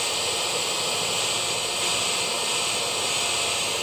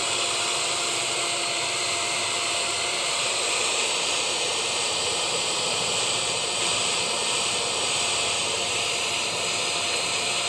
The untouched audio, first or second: first